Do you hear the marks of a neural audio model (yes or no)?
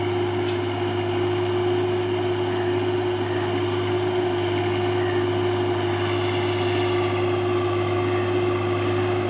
no